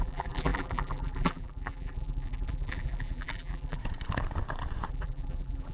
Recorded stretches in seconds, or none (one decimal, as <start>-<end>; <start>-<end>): 3.8-4.9

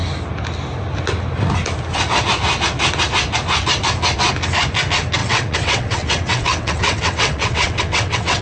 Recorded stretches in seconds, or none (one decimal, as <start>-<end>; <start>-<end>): 0.0-5.2

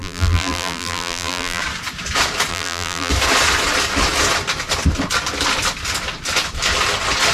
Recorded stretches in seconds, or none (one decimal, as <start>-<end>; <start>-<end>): 1.6-2.5; 3.1-7.3

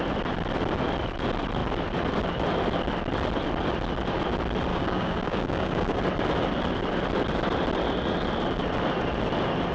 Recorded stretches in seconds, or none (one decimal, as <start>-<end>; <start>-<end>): 0.0-4.7; 6.0-9.7

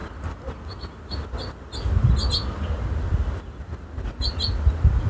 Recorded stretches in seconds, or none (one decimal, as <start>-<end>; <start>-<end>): 0.0-5.1